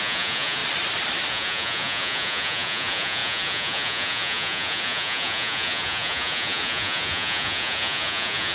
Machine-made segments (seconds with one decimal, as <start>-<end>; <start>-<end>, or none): 0.0-0.6; 1.3-8.5